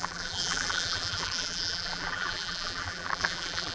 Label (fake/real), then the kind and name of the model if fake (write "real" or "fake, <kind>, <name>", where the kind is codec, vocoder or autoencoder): fake, vocoder, BigVGAN v2